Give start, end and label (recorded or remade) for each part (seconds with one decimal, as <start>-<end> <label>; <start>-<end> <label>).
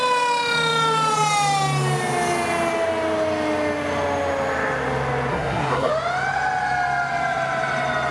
0.0-5.3 recorded; 5.3-5.9 remade; 5.9-8.1 recorded